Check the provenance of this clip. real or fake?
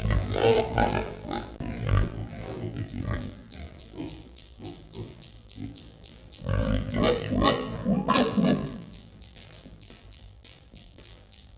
fake